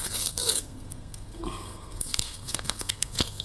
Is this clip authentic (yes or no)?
no